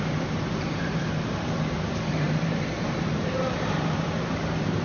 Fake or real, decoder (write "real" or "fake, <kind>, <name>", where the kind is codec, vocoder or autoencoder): fake, vocoder, BigVGAN v2